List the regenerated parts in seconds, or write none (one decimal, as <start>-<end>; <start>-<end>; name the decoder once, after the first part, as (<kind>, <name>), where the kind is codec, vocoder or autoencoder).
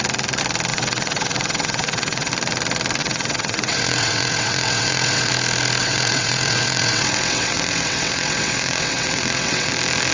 0.7-2.3 (vocoder, WaveNeXt); 3.0-5.3; 5.8-9.7